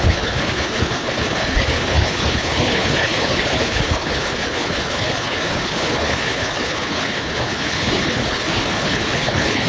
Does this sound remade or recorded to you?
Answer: remade